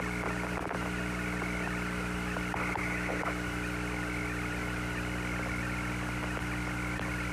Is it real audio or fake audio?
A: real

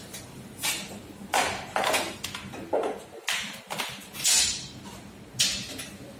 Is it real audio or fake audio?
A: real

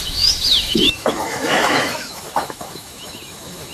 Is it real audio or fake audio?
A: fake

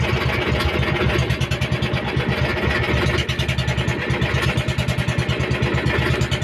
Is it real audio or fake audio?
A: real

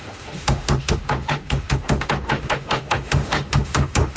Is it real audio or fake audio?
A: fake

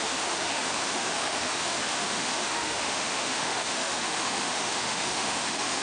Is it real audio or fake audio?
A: fake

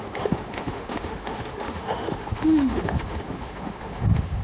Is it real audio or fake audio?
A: fake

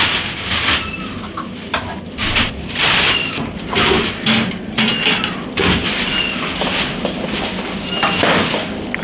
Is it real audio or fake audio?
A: real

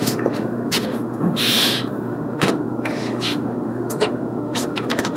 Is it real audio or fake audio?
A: fake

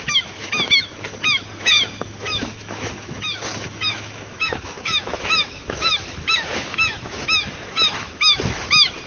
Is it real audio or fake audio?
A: fake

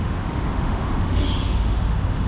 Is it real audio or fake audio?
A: fake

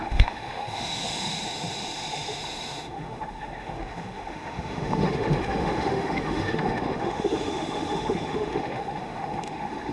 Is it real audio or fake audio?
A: fake